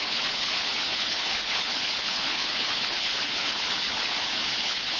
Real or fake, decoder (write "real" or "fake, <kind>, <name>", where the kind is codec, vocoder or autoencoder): fake, codec, HILCodec